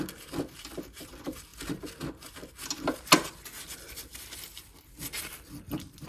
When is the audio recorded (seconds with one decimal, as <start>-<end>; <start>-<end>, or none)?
0.0-6.1

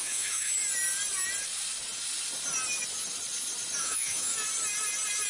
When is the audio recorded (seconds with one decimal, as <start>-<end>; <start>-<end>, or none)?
0.6-3.8; 4.3-5.3

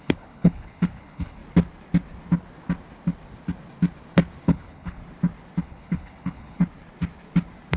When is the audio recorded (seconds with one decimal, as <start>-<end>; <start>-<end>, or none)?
1.4-4.4; 5.0-5.6; 6.6-7.8

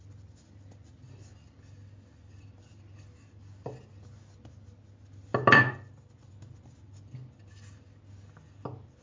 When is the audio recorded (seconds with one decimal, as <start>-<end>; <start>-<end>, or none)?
0.0-9.0

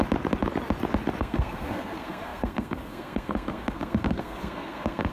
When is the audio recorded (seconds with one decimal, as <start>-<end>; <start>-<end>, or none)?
0.0-1.2